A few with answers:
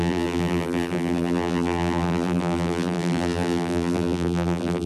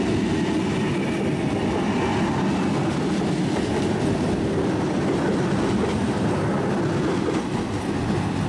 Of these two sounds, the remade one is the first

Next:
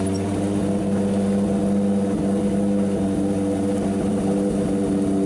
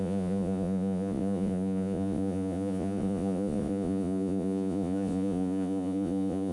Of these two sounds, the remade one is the second